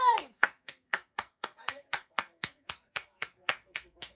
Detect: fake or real fake